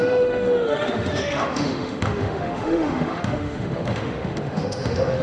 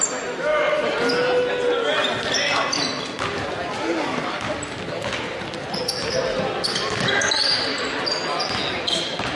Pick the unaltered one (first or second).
second